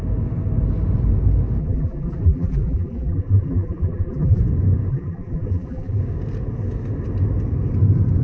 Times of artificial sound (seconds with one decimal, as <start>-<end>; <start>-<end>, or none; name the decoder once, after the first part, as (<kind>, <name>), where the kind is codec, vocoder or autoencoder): 1.6-4.4 (vocoder, BigVGAN v2); 4.9-6.0